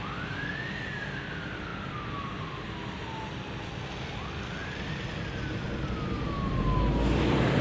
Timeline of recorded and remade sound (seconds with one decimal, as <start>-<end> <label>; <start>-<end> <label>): 0.0-7.6 recorded